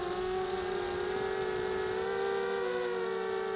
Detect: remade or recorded recorded